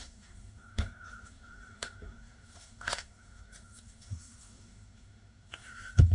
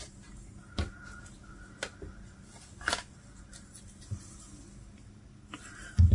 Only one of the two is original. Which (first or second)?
second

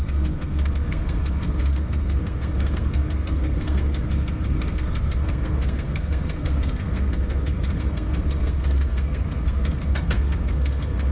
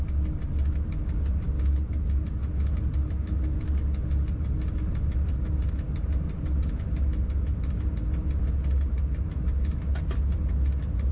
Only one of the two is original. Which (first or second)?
second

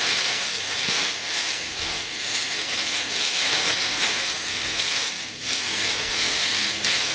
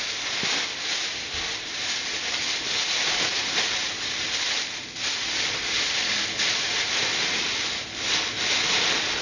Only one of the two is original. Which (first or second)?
second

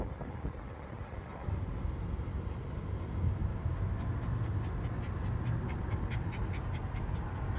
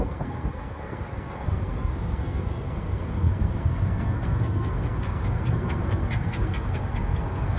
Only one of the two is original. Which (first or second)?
first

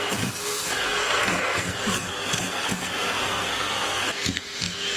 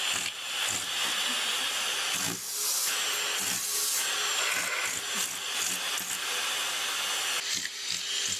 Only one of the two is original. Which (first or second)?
second